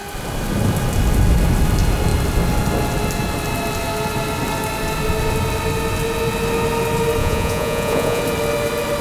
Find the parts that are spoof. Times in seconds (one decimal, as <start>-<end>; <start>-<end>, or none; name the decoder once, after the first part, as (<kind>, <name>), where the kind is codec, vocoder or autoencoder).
7.2-8.2 (vocoder, Vocos)